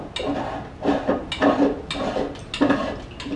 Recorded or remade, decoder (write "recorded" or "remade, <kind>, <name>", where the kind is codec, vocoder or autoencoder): recorded